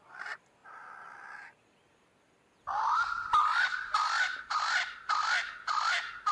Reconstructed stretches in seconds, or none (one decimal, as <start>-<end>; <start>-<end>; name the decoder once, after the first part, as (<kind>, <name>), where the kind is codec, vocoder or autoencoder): none